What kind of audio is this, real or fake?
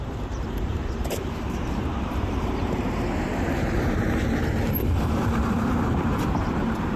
fake